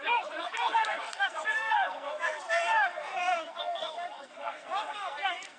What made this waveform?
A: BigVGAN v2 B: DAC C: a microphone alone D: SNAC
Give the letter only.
D